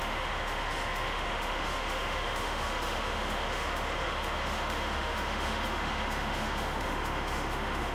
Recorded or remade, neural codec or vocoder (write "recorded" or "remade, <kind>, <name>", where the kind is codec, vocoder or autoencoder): remade, autoencoder, DAC-VAE